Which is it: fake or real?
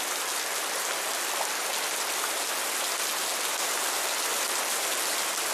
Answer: real